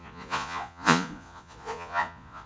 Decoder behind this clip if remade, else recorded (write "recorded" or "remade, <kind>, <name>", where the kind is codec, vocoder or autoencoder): remade, vocoder, Vocos